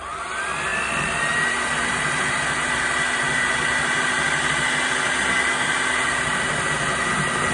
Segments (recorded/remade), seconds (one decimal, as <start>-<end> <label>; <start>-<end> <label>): 0.0-7.5 recorded